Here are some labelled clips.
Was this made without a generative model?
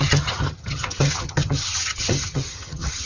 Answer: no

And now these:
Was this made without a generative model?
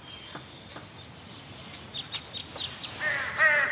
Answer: yes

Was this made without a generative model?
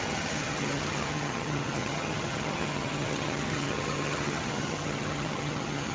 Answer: no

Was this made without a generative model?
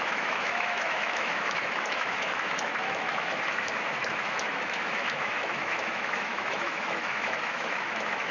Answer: no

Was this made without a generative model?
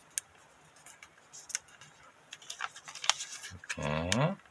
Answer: yes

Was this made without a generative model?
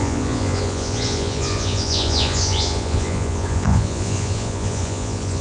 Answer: no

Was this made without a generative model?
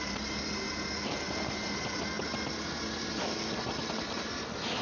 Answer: yes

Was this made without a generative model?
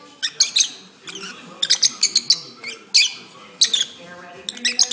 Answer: yes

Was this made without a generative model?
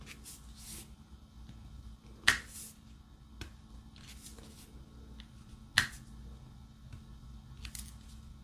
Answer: yes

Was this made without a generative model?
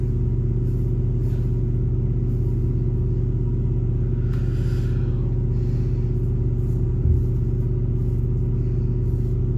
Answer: yes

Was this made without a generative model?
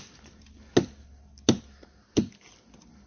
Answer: yes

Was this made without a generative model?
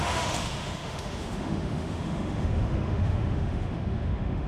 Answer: no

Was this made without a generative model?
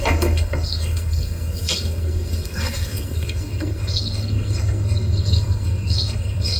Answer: no